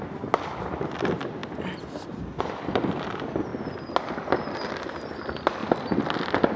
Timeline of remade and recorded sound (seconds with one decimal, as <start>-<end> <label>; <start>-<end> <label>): 0.0-5.6 recorded; 5.6-6.6 remade

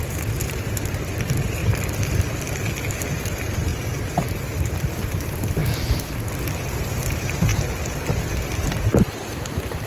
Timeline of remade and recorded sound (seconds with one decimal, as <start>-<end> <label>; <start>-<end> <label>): 0.0-1.6 remade; 1.6-2.9 recorded; 2.9-5.6 remade; 5.6-6.8 recorded; 6.8-7.5 remade; 7.5-8.1 recorded; 8.1-9.9 remade

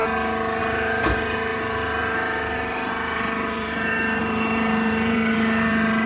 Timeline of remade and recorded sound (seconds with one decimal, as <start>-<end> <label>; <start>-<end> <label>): 0.0-0.6 recorded; 0.6-6.1 remade

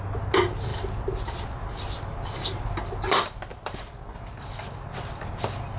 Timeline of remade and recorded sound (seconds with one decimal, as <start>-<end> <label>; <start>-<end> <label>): 0.0-5.8 recorded